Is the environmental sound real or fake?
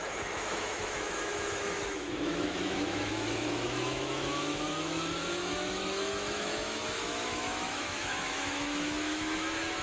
fake